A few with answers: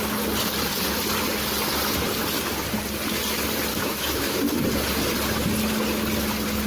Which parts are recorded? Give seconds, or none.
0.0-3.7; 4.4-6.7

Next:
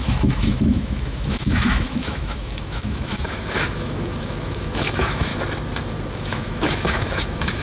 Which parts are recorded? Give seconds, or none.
5.3-6.1

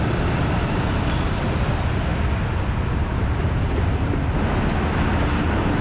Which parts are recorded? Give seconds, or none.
0.0-5.8